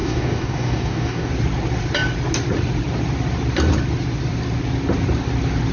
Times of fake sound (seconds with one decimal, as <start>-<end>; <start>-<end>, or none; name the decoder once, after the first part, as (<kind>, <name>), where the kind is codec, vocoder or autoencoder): 0.0-1.3 (codec, DAC)